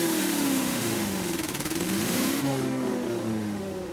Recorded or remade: remade